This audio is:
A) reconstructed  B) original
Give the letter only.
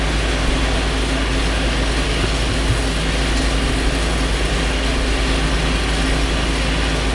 B